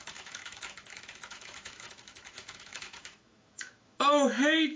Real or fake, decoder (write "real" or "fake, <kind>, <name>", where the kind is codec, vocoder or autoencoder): fake, autoencoder, DAC-VAE